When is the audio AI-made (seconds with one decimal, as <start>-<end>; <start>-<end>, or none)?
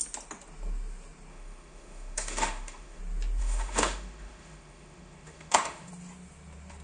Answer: 1.3-3.0; 3.4-5.9